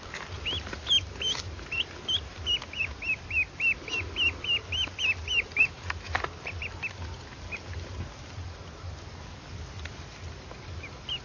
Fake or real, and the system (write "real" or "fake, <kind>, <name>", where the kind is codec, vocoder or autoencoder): real